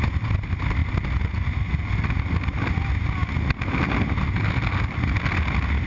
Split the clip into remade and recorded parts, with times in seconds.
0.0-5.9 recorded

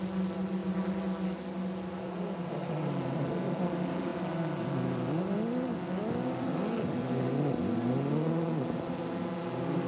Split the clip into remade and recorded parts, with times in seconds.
0.0-9.9 recorded

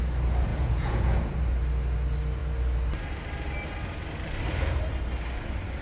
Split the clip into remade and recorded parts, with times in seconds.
0.0-0.5 recorded; 0.5-1.2 remade; 1.2-5.8 recorded